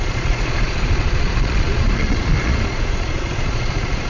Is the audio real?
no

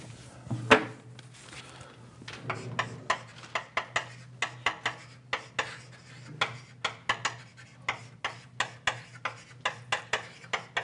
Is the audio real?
yes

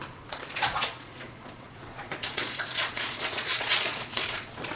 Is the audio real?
no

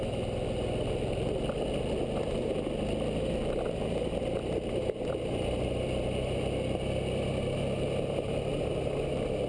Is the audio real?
yes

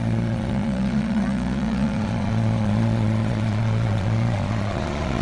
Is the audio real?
no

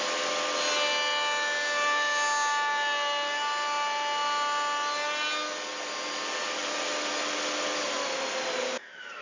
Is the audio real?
yes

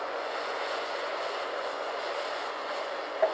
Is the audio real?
no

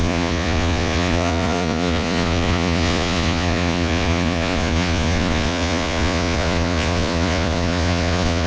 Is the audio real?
no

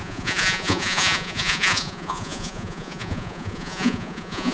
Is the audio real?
no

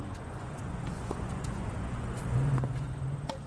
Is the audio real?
no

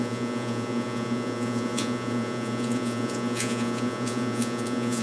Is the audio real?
no